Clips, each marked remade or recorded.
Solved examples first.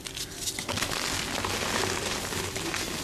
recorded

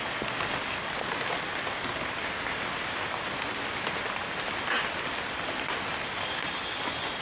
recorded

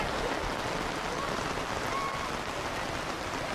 recorded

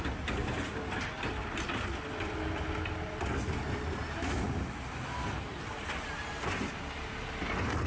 recorded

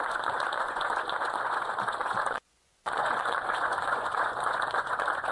remade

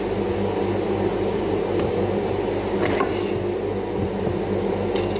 recorded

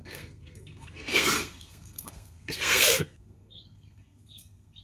remade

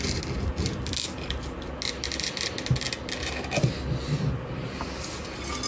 recorded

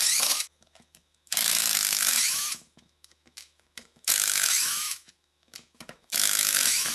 remade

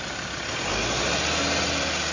recorded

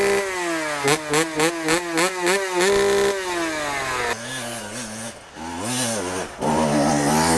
recorded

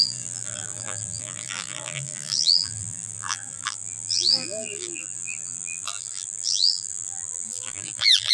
remade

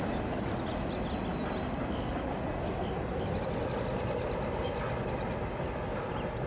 recorded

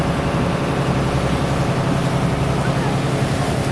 recorded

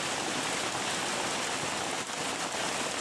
recorded